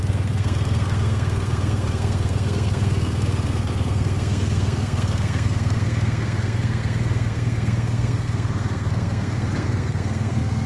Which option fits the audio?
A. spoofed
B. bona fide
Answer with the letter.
A